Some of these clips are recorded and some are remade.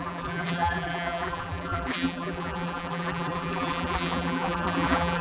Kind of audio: remade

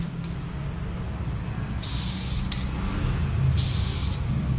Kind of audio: recorded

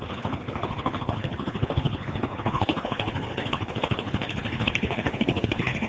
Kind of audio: remade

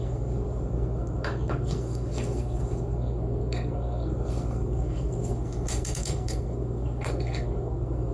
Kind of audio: remade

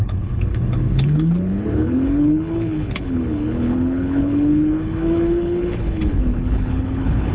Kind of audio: remade